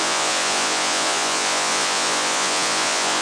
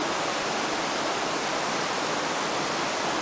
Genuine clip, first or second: second